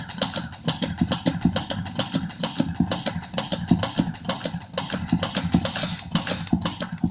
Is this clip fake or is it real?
real